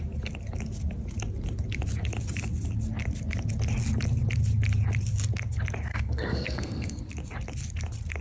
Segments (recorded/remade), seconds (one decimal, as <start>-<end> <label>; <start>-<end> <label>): 0.0-5.9 recorded; 5.9-7.0 remade; 7.0-8.2 recorded